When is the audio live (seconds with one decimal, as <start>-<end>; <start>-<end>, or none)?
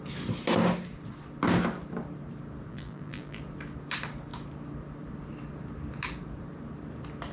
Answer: 0.0-2.7; 3.4-7.3